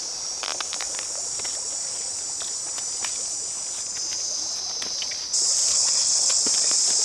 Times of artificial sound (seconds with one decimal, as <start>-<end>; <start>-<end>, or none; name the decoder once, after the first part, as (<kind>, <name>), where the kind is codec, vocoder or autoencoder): 5.7-6.4 (codec, HILCodec)